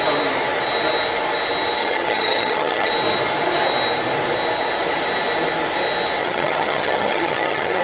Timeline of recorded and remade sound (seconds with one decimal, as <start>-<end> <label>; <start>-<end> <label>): 0.0-1.8 recorded; 1.8-2.9 remade; 2.9-6.2 recorded; 6.2-7.8 remade